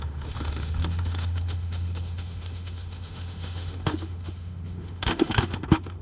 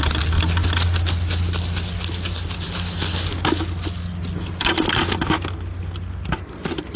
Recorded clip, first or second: second